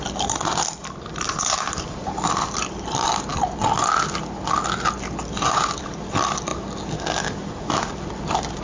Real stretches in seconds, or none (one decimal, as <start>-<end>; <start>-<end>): 3.3-4.5; 6.5-7.7